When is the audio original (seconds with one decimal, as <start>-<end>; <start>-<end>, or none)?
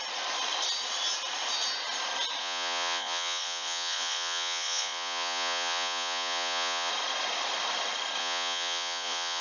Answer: 0.0-2.4; 6.9-8.2